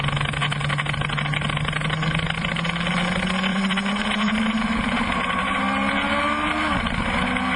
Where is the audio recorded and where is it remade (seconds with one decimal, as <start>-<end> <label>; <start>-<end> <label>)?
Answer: 0.0-3.5 recorded; 3.5-5.6 remade; 5.6-7.6 recorded